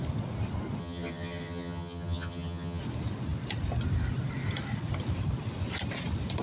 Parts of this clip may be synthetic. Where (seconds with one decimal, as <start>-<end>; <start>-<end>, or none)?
0.8-2.8